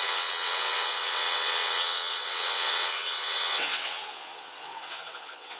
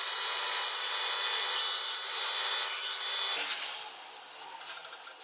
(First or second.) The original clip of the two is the second